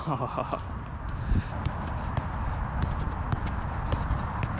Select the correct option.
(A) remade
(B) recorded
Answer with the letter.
B